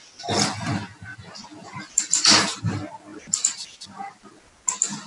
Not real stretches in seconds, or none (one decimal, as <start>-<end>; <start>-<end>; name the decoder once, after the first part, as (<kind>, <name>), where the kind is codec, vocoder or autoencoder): 1.1-2.6 (vocoder, BigVGAN v2); 3.1-4.3